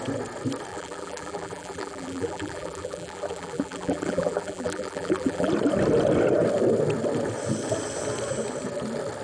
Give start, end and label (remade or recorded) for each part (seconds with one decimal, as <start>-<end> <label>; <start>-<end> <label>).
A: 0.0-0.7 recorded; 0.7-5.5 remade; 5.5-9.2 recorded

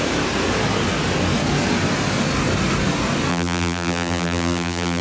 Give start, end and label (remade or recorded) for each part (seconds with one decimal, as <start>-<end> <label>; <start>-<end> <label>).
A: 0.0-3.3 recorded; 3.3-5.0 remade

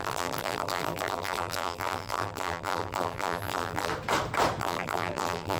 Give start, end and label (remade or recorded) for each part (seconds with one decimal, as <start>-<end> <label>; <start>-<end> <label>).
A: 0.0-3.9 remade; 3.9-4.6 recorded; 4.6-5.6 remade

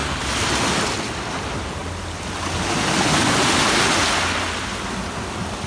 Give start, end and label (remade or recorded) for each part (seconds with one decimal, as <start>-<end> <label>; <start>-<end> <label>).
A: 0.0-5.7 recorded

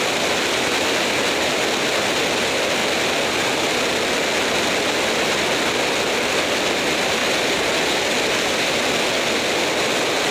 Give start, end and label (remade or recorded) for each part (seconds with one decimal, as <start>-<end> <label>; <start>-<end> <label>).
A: 0.0-10.3 recorded

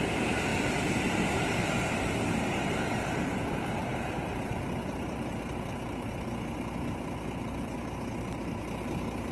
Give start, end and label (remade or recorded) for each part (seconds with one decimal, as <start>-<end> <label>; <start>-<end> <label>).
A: 0.0-0.5 recorded; 0.5-2.8 remade; 2.8-3.8 recorded; 3.8-6.1 remade; 6.1-9.3 recorded